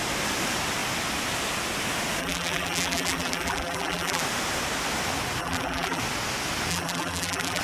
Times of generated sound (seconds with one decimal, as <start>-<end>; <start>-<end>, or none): 2.2-4.2; 5.4-6.0; 6.7-7.6